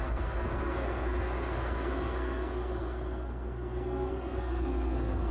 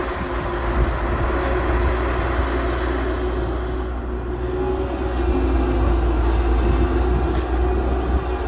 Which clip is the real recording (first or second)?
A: second